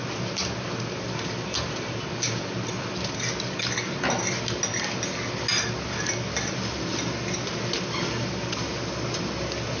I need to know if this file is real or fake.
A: real